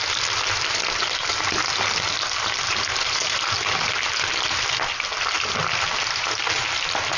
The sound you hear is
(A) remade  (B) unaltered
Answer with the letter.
B